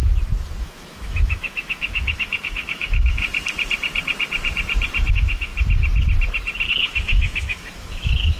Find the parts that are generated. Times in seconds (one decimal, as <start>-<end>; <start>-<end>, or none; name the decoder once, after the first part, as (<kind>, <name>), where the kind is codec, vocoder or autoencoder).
0.6-3.2 (autoencoder, DAC-VAE); 5.1-5.5; 6.7-8.4